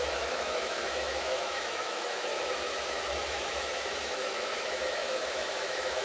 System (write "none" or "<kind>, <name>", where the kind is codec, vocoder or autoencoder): autoencoder, DAC-VAE